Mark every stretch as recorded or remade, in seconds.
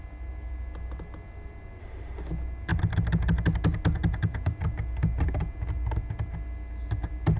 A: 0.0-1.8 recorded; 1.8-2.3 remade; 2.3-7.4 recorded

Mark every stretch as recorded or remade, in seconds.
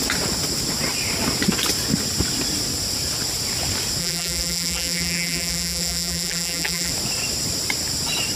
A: 0.0-4.0 recorded; 4.0-6.9 remade; 6.9-8.4 recorded